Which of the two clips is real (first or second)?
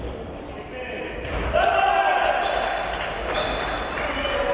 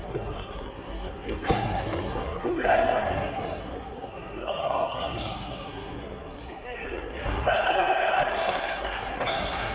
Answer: first